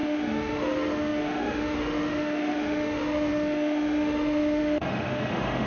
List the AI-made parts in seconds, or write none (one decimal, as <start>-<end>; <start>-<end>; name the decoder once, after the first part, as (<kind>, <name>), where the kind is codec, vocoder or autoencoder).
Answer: 0.0-5.7 (autoencoder, DAC-VAE)